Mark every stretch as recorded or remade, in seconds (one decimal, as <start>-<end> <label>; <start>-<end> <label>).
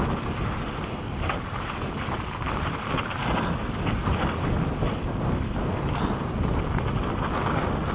0.0-7.9 recorded